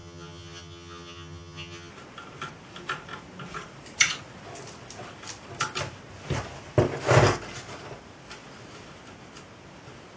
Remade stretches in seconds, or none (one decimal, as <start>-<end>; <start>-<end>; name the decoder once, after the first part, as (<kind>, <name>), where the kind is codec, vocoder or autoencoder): 0.0-1.9 (vocoder, HiFi-GAN)